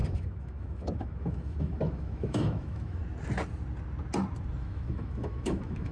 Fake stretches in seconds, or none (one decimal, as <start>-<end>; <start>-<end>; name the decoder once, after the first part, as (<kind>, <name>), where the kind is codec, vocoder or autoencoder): 0.0-3.0 (autoencoder, DAC-VAE); 4.6-5.9